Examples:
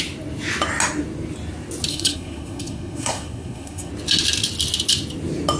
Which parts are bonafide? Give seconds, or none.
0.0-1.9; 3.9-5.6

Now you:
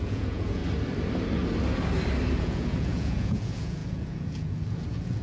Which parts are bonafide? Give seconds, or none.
0.6-2.4

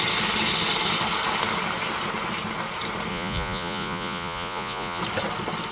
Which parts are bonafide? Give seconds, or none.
0.0-3.1; 5.0-5.7

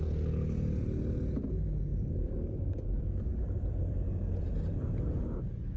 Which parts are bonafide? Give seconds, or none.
0.0-1.9; 4.5-5.8

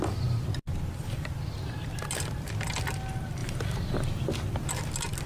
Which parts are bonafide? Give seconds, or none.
0.0-5.3